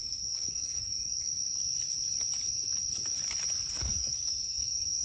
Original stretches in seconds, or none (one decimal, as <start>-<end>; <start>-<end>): 1.3-3.8